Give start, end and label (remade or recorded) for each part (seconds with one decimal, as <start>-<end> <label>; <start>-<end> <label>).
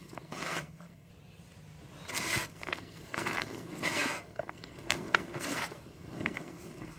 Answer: 0.0-1.1 remade; 1.1-2.1 recorded; 2.1-7.0 remade